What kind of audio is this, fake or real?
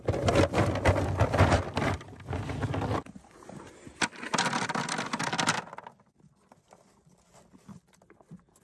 real